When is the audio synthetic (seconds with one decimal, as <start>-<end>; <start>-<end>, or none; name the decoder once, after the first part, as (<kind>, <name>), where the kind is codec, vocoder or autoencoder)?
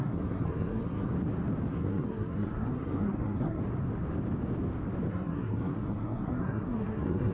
0.0-1.1 (codec, SNAC); 1.7-3.6; 5.1-7.3